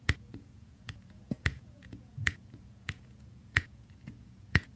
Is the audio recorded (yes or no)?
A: no